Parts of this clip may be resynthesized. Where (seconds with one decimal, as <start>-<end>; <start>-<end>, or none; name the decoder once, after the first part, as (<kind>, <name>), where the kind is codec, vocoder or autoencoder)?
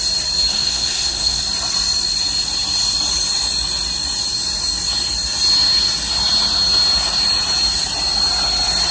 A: 0.5-1.4 (codec, SNAC)